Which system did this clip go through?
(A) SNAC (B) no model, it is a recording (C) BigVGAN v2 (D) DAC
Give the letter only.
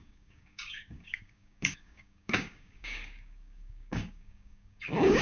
D